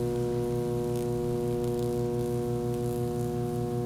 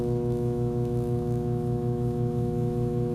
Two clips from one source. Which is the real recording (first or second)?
first